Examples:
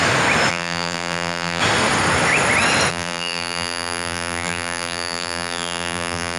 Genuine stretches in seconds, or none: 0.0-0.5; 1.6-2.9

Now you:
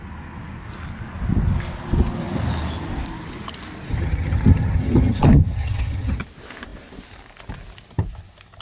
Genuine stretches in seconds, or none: 0.0-3.9; 6.2-8.6

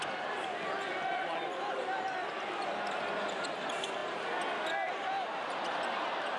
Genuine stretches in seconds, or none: 0.0-6.4

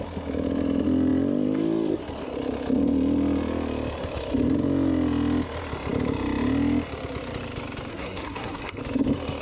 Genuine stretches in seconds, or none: 0.0-7.9; 8.8-9.4

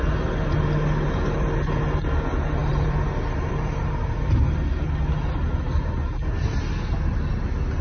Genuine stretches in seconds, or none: 0.0-2.6; 3.5-7.8